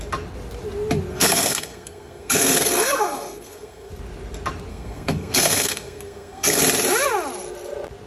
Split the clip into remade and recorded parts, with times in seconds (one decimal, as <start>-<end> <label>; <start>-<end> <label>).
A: 0.0-1.1 recorded; 1.1-3.9 remade; 3.9-4.7 recorded; 4.7-6.6 remade; 6.6-8.1 recorded